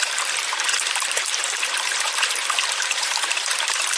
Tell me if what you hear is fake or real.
fake